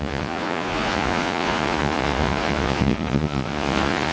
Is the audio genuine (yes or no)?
no